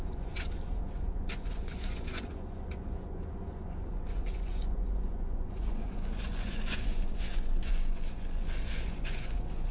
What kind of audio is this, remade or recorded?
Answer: remade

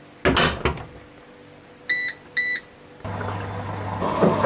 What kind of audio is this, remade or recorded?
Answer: recorded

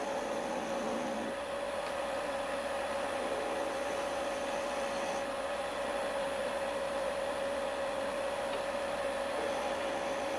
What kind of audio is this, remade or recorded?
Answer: recorded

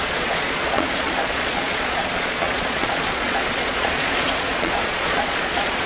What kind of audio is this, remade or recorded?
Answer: remade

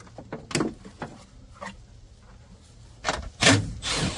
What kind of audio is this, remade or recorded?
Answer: recorded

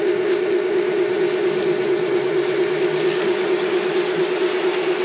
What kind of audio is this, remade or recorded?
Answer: recorded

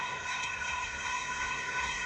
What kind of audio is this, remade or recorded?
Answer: remade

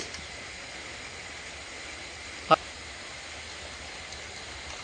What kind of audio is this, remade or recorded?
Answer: recorded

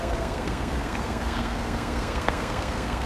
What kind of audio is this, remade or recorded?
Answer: remade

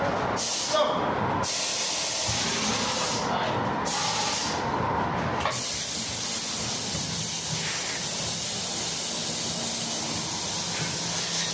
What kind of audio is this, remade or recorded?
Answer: recorded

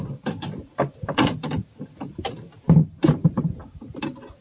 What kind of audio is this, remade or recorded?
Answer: remade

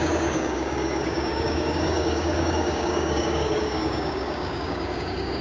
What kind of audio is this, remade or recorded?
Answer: remade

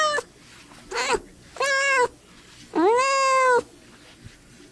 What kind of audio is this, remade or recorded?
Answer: recorded